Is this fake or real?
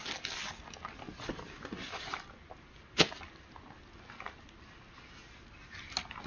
real